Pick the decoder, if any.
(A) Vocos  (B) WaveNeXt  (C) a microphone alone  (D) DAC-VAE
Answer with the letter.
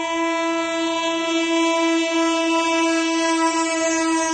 C